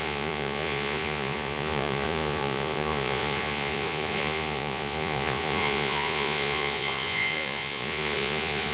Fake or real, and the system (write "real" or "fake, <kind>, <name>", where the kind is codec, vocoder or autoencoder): fake, vocoder, Vocos